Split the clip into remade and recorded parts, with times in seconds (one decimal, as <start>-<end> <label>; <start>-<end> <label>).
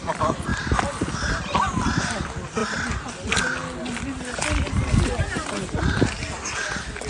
0.0-7.1 recorded